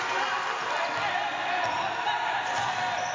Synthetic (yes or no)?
no